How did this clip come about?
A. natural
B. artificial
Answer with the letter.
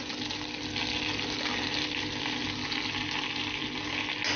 A